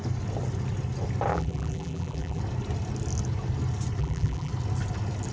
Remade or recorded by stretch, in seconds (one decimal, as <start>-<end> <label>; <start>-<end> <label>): 0.0-1.3 recorded; 1.3-2.4 remade; 2.4-4.0 recorded; 4.0-4.5 remade; 4.5-5.3 recorded